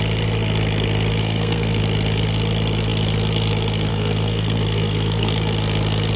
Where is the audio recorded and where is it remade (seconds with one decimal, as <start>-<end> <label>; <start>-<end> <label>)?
0.0-1.2 recorded; 1.2-1.8 remade; 1.8-3.9 recorded; 3.9-5.3 remade; 5.3-6.2 recorded